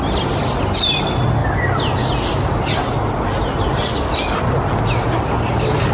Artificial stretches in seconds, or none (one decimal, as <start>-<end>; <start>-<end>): none